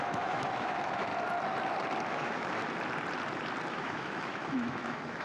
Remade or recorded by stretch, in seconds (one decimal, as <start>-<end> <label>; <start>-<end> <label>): 0.0-1.1 remade; 1.1-2.1 recorded; 2.1-2.6 remade; 2.6-3.7 recorded; 3.7-5.2 remade